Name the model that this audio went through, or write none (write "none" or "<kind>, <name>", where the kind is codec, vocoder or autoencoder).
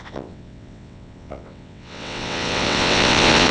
vocoder, WaveNeXt